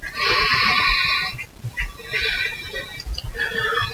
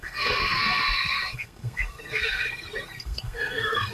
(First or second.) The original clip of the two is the first